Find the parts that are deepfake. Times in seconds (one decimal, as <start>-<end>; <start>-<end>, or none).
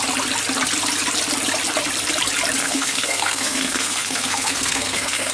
2.6-5.3